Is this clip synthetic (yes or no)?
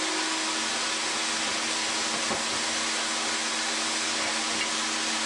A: no